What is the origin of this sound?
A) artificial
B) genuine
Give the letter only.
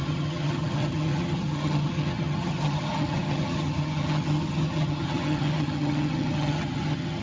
A